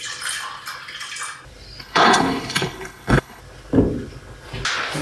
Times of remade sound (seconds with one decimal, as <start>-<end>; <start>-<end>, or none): 1.8-3.4